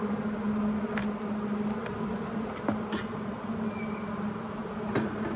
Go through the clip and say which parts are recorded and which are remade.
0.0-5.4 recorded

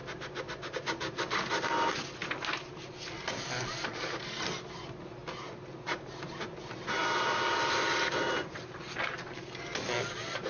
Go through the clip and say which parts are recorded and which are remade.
0.0-10.5 recorded